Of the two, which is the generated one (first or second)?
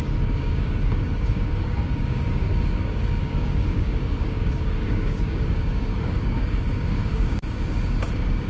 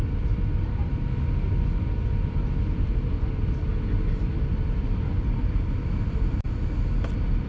first